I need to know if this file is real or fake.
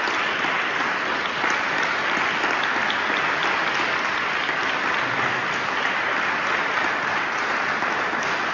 real